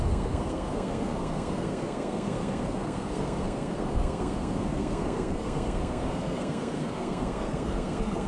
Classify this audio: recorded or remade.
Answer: remade